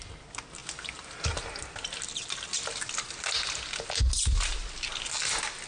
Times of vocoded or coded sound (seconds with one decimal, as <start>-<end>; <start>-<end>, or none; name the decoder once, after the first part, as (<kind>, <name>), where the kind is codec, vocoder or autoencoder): none